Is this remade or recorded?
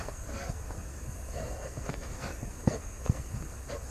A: remade